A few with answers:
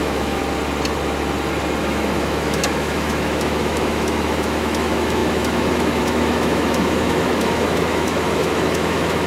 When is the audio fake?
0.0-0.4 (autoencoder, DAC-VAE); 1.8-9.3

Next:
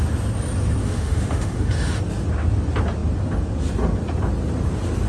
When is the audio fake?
0.8-2.0 (autoencoder, DAC-VAE)

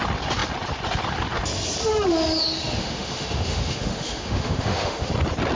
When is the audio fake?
2.8-5.1 (autoencoder, DAC-VAE)

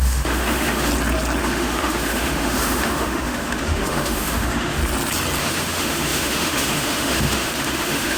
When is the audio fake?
0.0-0.9 (autoencoder, DAC-VAE); 1.4-4.8; 5.4-8.2